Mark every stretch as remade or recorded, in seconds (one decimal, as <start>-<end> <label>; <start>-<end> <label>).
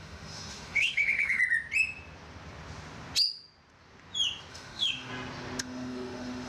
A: 0.0-1.4 remade; 1.4-4.5 recorded; 4.5-5.1 remade; 5.1-5.6 recorded; 5.6-6.5 remade